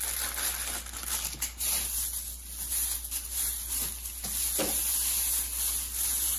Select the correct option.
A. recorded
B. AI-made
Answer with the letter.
A